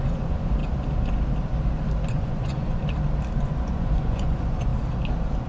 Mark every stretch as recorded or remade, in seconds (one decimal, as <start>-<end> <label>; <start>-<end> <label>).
0.0-0.6 remade; 0.6-2.1 recorded; 2.1-2.8 remade; 2.8-3.4 recorded; 3.4-4.7 remade; 4.7-5.5 recorded